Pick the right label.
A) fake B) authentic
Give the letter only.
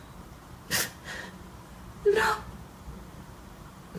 A